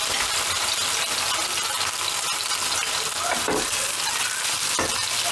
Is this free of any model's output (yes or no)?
yes